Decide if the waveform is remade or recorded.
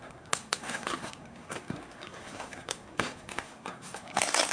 remade